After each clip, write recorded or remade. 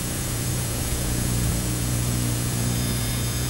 remade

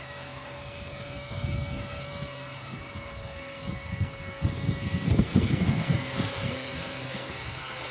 remade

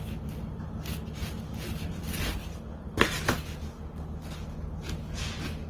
recorded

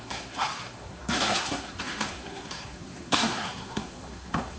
remade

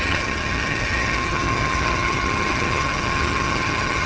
remade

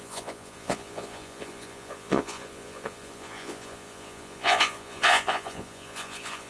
remade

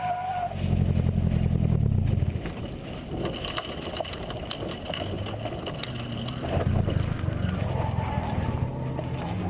recorded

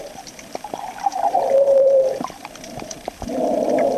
remade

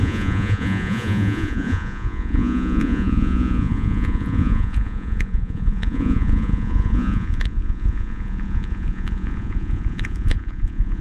remade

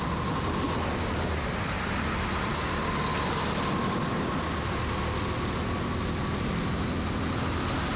recorded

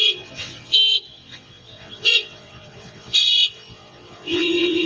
remade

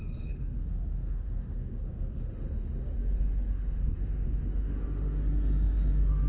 remade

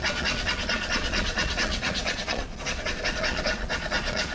remade